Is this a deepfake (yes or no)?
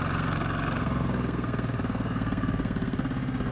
yes